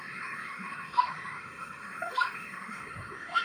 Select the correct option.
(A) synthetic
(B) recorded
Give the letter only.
A